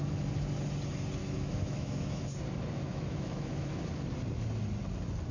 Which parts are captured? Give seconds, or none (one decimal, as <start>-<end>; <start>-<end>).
0.0-1.2; 2.2-2.9; 3.8-5.3